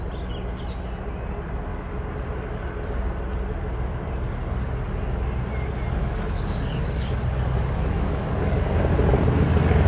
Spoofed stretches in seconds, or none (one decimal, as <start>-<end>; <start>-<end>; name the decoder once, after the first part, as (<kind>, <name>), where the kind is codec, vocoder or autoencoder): 6.0-8.8 (codec, DAC)